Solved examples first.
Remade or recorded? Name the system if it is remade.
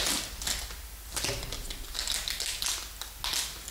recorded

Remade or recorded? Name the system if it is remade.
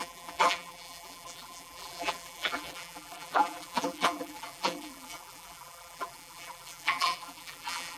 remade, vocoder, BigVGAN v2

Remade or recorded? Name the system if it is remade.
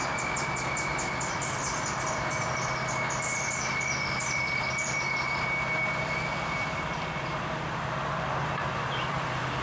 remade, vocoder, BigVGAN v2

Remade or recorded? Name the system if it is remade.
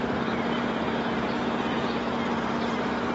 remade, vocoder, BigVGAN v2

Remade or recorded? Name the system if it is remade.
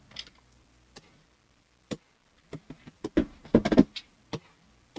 recorded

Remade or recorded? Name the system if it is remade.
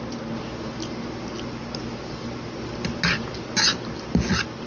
recorded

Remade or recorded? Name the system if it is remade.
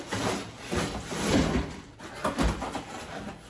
remade, vocoder, BigVGAN v2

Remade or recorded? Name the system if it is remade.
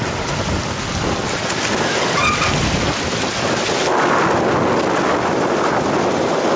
recorded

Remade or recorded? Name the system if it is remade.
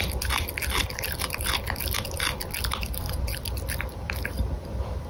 recorded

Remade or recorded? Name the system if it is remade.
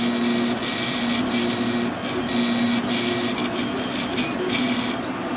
recorded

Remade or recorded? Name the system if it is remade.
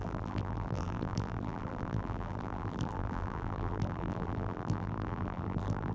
remade, vocoder, BigVGAN v2